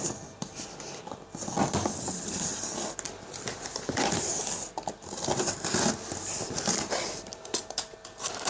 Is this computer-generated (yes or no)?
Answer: no